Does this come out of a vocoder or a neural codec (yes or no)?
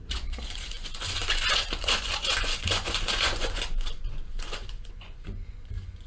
yes